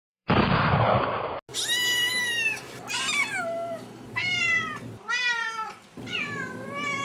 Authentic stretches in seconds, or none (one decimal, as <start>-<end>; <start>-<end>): 0.7-4.2; 6.4-7.0